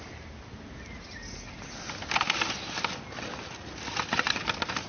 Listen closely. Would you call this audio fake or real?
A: real